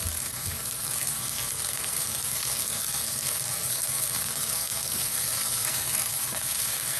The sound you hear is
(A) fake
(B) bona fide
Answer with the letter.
A